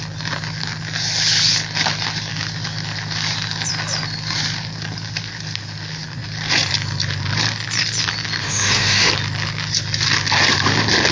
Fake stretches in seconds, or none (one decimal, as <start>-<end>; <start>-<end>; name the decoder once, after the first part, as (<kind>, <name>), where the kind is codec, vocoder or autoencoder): 8.4-9.1 (autoencoder, DAC-VAE)